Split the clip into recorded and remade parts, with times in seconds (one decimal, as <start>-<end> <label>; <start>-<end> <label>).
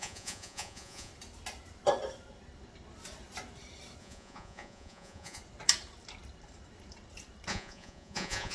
0.0-1.1 remade; 1.1-4.0 recorded; 4.0-5.4 remade; 5.4-7.5 recorded; 7.5-8.5 remade